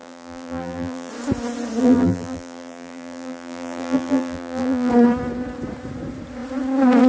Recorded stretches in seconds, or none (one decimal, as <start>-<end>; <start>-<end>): 1.1-1.8; 4.9-7.1